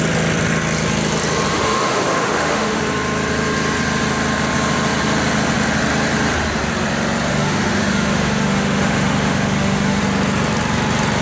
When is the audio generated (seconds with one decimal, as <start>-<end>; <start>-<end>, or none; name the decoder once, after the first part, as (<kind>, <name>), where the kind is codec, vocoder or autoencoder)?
1.5-2.8 (autoencoder, DAC-VAE); 7.3-10.0